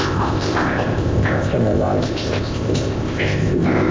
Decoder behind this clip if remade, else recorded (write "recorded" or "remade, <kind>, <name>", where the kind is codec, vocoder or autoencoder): remade, codec, ZipCodec